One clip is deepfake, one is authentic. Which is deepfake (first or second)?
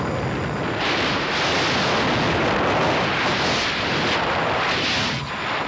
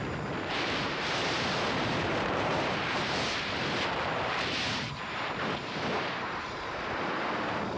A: second